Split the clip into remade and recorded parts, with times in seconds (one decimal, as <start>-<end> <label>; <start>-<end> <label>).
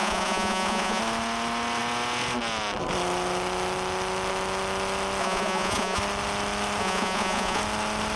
0.0-1.0 remade; 1.0-5.2 recorded; 5.2-6.0 remade; 6.0-6.8 recorded; 6.8-7.6 remade; 7.6-8.2 recorded